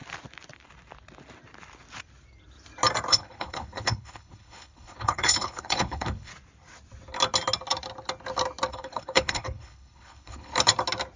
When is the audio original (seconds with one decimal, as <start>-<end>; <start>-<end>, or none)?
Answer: 0.0-3.1; 6.3-8.7; 10.5-11.2